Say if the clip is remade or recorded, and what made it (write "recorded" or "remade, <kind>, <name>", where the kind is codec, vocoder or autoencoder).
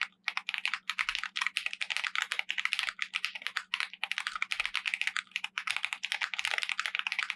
recorded